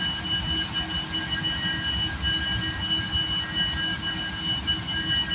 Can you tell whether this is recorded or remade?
recorded